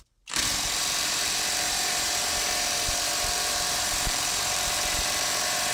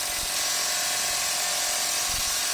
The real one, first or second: second